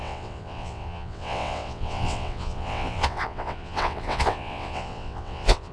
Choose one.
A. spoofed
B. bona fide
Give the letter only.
A